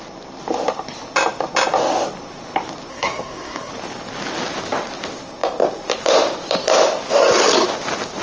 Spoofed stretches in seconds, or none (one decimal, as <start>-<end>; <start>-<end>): 2.9-3.7